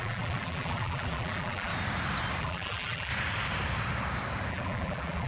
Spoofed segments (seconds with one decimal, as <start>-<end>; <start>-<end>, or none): 0.0-1.7; 2.4-3.1; 4.5-5.3

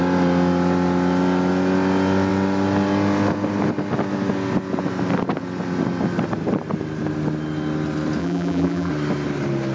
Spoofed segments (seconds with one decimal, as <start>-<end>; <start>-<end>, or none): 8.2-8.9

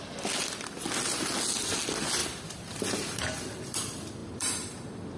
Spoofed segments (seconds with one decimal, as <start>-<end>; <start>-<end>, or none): 2.2-3.8; 4.2-5.2